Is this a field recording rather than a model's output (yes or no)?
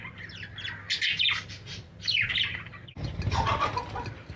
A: yes